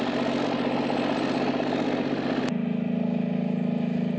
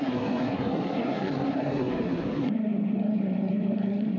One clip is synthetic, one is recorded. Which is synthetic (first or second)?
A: second